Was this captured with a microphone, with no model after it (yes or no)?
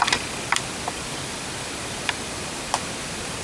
no